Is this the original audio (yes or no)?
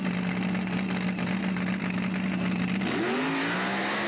yes